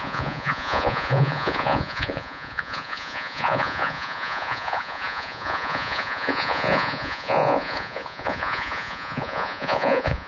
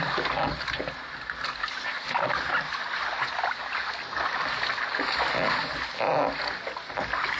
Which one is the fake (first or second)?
first